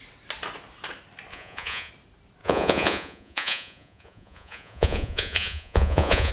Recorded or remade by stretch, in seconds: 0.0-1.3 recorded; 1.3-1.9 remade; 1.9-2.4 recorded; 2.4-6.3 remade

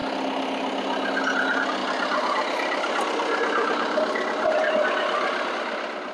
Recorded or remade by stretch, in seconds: 0.0-6.1 recorded

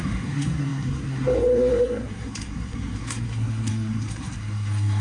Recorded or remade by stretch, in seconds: 0.0-5.0 remade

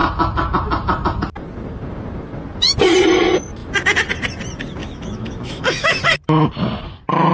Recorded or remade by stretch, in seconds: 0.0-4.8 recorded; 4.8-6.0 remade; 6.0-7.3 recorded

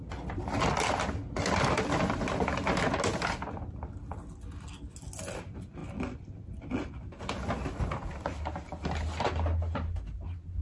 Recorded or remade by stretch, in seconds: 0.0-10.6 recorded

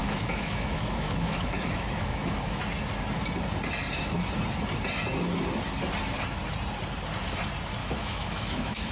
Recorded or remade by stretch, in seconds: 0.0-2.6 remade; 2.6-7.8 recorded; 7.8-8.9 remade

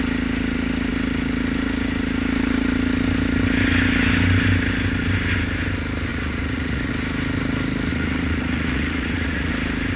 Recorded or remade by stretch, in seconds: 0.0-6.1 recorded; 6.1-6.9 remade; 6.9-7.9 recorded; 7.9-9.5 remade; 9.5-10.0 recorded

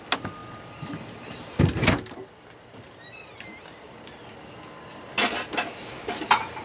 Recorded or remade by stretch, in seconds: 0.0-4.9 recorded; 4.9-5.8 remade; 5.8-6.6 recorded